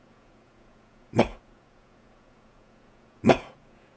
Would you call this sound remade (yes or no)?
yes